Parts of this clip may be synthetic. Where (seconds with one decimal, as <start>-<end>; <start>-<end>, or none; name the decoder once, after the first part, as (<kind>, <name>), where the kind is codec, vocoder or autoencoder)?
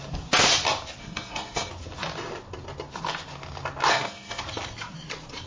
1.0-1.7 (codec, SNAC); 3.9-4.4